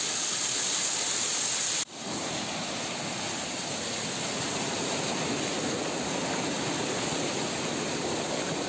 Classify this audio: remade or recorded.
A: recorded